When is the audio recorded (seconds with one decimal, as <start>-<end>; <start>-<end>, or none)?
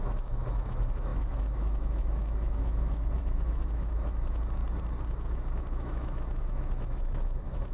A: 4.6-5.1